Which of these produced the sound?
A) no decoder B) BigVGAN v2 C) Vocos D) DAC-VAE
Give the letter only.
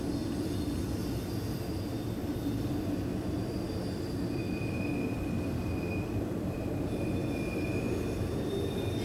A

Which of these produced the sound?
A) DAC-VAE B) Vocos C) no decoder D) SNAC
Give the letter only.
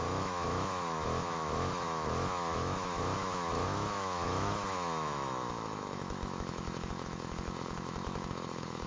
A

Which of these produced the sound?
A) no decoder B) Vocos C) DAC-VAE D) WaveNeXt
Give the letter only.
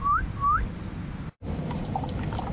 A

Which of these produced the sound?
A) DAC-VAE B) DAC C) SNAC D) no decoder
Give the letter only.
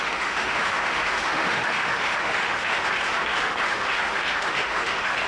A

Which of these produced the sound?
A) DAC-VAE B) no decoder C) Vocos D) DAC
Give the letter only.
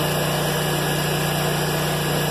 B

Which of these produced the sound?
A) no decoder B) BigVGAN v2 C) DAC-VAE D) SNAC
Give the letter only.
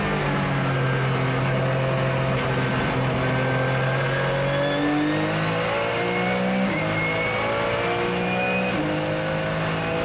A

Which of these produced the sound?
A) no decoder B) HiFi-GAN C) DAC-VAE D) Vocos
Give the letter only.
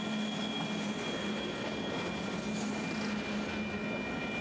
A